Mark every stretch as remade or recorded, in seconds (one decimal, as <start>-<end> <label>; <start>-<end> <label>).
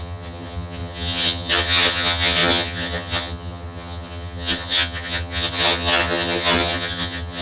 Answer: 0.0-7.4 remade